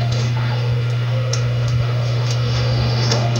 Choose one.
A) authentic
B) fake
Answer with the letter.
B